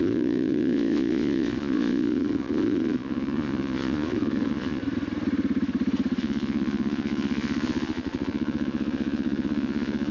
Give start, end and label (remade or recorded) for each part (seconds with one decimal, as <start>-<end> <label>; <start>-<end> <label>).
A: 0.0-4.8 remade; 4.8-6.2 recorded; 6.2-10.1 remade